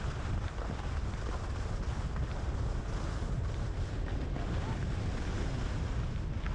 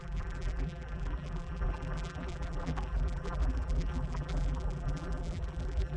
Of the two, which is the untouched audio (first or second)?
first